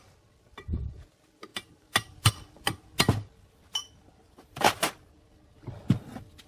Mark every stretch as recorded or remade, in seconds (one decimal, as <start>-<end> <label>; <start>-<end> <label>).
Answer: 0.0-1.5 recorded; 1.5-2.3 remade; 2.3-3.8 recorded; 3.8-5.1 remade; 5.1-6.5 recorded